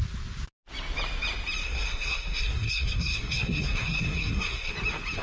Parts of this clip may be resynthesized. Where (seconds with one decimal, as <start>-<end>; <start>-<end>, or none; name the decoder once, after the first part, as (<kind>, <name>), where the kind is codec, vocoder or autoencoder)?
1.6-4.7 (codec, SNAC)